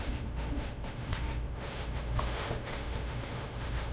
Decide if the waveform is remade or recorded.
remade